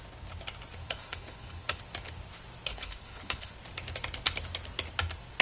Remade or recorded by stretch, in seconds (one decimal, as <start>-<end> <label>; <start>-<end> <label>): 0.0-0.8 recorded; 0.8-1.8 remade; 1.8-2.7 recorded; 2.7-3.5 remade; 3.5-5.4 recorded